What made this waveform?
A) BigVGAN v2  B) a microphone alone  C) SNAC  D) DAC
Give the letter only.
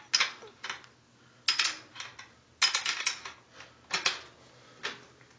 B